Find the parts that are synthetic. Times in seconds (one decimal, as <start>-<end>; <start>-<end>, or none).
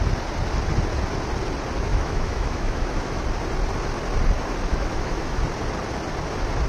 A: 1.9-3.2; 4.7-5.4